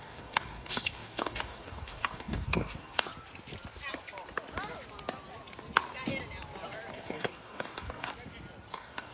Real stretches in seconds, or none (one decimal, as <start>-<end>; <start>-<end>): 3.1-6.9; 8.1-8.7